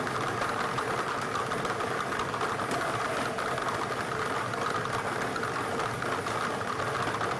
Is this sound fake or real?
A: real